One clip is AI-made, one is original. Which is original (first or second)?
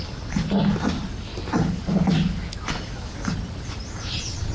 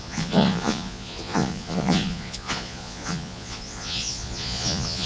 first